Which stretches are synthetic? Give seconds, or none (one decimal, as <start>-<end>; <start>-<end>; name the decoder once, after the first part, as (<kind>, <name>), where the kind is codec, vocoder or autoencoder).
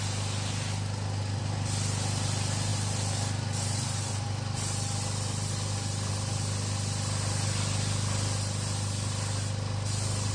none